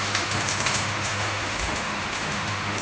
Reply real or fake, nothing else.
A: fake